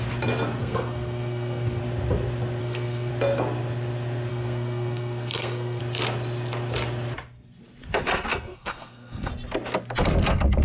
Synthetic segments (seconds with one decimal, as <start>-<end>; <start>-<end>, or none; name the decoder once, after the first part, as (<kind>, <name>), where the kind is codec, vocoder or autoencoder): 0.6-1.8 (codec, SNAC); 2.6-3.1; 4.3-5.8; 8.3-9.3